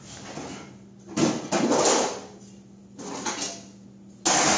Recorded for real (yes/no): yes